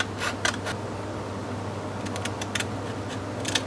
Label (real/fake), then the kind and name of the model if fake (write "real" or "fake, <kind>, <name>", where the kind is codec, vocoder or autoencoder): real